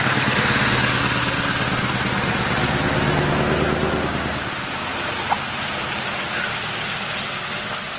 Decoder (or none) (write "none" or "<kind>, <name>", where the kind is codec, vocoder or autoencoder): none